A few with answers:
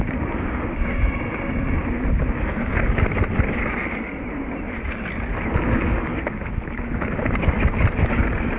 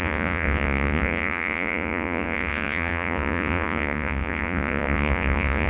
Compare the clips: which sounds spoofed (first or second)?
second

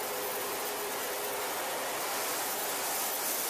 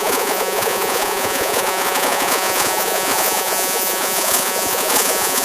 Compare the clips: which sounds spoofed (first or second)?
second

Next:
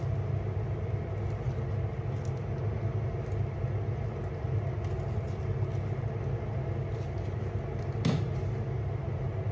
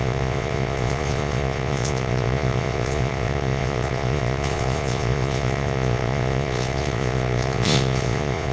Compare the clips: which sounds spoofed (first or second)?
second